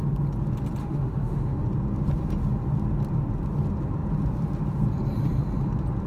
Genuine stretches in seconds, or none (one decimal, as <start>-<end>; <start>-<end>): 0.0-0.8; 1.6-6.1